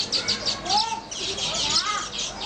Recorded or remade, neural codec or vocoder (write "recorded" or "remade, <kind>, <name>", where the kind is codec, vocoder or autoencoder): recorded